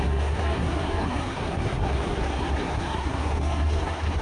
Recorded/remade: remade